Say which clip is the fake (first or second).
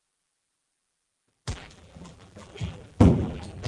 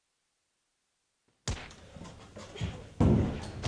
first